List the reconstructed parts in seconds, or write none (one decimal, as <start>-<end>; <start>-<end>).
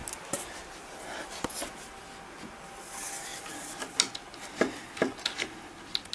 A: none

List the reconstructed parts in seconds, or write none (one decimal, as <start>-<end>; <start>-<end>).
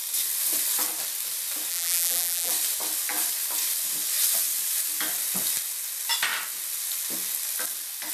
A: 1.7-2.5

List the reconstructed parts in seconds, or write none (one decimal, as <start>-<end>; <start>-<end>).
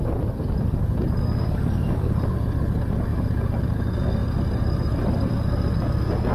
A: 4.2-5.3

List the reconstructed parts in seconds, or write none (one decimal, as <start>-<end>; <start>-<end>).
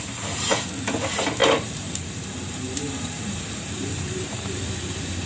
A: 1.4-4.6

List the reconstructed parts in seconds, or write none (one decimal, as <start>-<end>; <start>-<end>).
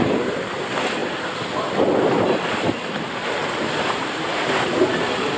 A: 3.4-4.8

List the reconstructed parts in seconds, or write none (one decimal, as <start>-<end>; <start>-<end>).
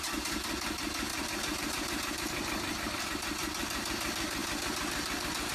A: 1.1-3.0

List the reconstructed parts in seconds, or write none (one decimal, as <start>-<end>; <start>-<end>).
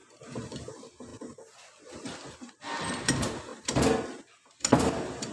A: 0.7-3.5; 4.2-5.3